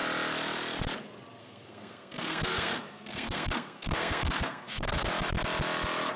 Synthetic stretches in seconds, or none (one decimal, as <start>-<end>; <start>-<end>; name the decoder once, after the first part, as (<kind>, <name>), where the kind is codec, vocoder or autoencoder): 1.4-5.1 (codec, SNAC)